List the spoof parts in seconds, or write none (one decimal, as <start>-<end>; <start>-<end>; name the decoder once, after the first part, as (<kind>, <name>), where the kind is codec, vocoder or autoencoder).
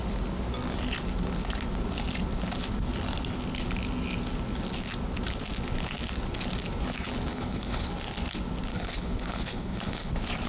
7.3-7.9 (codec, HILCodec); 8.7-10.1